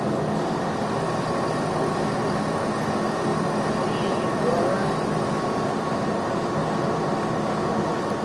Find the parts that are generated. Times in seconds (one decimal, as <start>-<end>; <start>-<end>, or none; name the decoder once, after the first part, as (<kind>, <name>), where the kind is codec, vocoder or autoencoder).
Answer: none